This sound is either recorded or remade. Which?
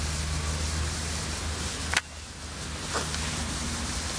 recorded